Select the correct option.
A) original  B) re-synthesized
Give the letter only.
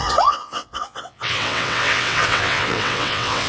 B